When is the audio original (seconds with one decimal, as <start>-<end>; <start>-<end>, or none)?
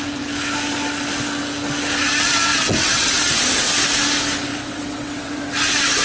0.0-2.5; 3.3-4.5; 5.4-6.0